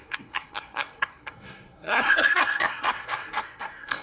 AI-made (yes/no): yes